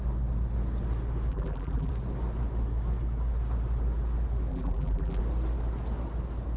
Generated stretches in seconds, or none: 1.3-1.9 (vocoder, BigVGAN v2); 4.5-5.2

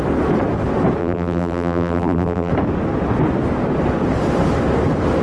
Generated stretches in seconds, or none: 1.0-2.5 (vocoder, BigVGAN v2)

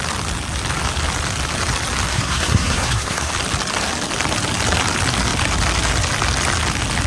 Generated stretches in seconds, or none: 2.1-3.3 (codec, SNAC)